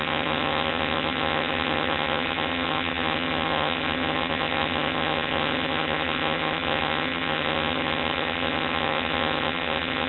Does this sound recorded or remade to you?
remade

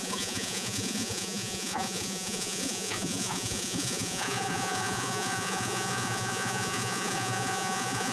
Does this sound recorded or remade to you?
remade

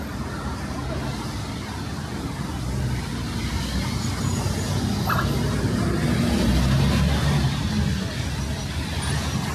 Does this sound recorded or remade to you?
recorded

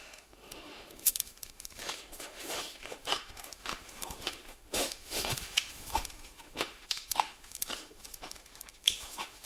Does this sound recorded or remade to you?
remade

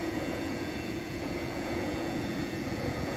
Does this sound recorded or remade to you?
remade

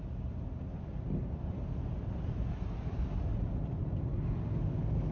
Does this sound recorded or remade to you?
recorded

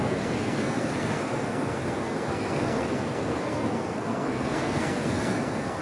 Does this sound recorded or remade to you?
remade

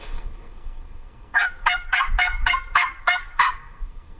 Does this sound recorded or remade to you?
remade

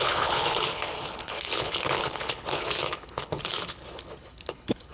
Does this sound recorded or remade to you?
remade